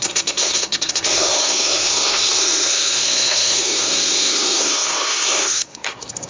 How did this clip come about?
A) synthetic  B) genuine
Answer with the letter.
A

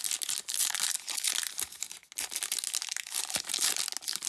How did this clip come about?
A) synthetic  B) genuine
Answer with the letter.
B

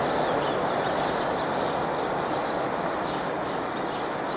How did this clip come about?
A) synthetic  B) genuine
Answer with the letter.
B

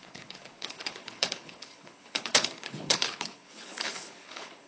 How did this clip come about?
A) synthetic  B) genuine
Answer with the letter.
A